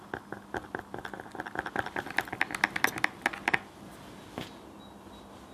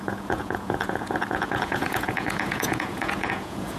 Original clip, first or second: first